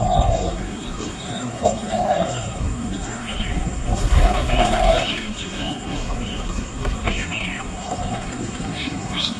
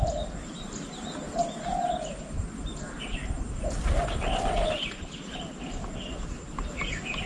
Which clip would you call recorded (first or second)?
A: second